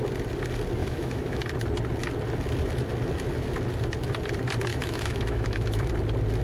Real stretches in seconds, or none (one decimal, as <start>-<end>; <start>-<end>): 0.0-0.8; 1.4-4.7; 5.9-6.4